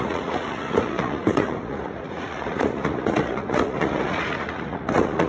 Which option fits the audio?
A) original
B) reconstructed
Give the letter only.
B